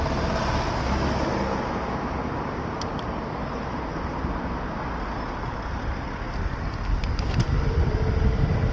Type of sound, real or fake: real